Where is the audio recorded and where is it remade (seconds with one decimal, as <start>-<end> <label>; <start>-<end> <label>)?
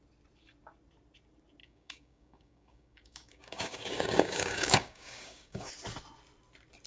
0.0-1.6 recorded; 1.6-5.7 remade; 5.7-6.9 recorded